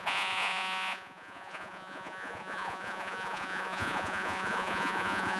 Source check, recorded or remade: remade